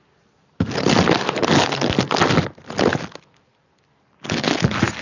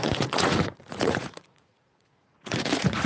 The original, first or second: first